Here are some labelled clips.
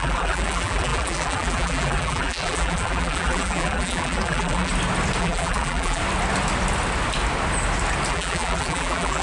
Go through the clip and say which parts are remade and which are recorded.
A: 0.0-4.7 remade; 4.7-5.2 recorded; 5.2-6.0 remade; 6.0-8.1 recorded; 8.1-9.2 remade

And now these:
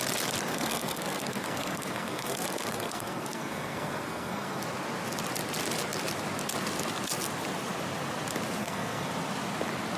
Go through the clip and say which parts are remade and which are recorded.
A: 0.0-0.5 recorded; 0.5-4.6 remade; 4.6-8.6 recorded; 8.6-9.1 remade; 9.1-10.0 recorded

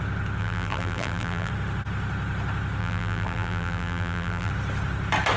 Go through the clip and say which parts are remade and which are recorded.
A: 0.0-0.4 recorded; 0.4-1.5 remade; 1.5-2.8 recorded; 2.8-4.5 remade; 4.5-5.4 recorded

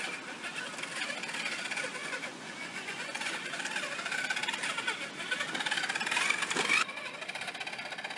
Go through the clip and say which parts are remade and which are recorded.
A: 0.0-2.0 recorded; 2.0-3.6 remade; 3.6-8.2 recorded

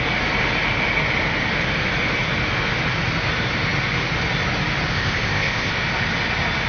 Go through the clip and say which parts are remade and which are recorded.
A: 0.0-4.9 recorded; 4.9-5.7 remade; 5.7-6.7 recorded

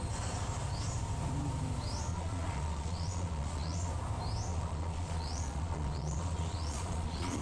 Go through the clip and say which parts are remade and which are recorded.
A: 0.0-2.1 recorded; 2.1-3.9 remade; 3.9-4.5 recorded; 4.5-7.4 remade

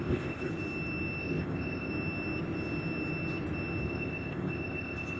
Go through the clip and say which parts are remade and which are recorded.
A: 0.0-0.5 remade; 0.5-1.2 recorded; 1.2-1.9 remade; 1.9-3.8 recorded; 3.8-5.2 remade